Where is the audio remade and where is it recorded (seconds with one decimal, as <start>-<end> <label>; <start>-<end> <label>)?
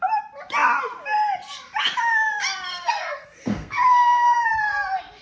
0.0-2.7 recorded; 2.7-4.5 remade; 4.5-5.2 recorded